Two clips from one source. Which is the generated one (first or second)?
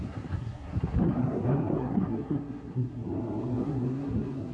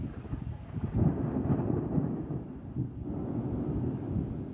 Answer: first